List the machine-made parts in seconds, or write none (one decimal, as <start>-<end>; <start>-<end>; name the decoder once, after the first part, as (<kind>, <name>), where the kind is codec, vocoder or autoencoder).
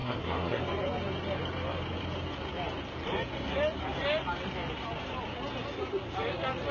0.0-0.6 (codec, SNAC)